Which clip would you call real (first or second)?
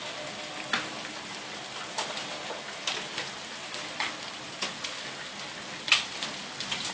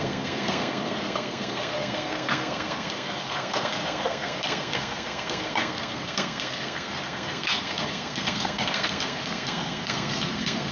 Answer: first